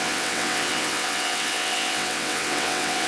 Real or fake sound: fake